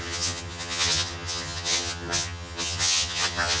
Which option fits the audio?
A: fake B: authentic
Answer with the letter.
A